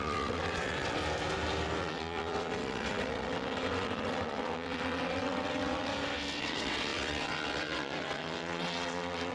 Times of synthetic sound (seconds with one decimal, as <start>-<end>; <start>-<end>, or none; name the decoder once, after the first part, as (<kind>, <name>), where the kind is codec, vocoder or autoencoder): 0.0-1.0 (vocoder, WaveNeXt); 1.8-5.9; 6.4-9.3